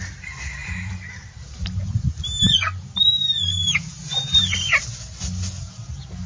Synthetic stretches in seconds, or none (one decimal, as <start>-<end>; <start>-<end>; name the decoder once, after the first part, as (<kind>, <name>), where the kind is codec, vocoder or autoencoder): none